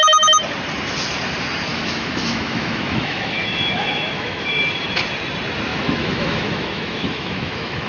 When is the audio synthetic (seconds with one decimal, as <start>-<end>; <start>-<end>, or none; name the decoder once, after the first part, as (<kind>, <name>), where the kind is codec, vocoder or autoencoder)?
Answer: 1.7-4.7 (autoencoder, DAC-VAE); 5.7-7.9